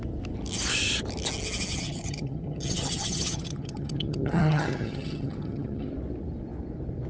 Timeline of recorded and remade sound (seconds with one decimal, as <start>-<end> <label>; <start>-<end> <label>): 0.0-1.7 recorded; 1.7-5.9 remade; 5.9-7.1 recorded